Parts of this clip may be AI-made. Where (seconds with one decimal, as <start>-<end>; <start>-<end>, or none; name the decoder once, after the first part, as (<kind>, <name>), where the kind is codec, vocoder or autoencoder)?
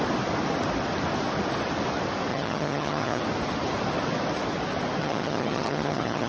2.3-3.2 (vocoder, HiFi-GAN); 5.0-6.3